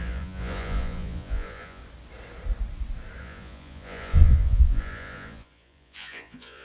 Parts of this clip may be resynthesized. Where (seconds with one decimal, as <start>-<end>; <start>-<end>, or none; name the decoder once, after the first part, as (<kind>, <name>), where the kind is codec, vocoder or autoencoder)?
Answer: 0.0-1.8 (vocoder, Vocos); 3.2-6.6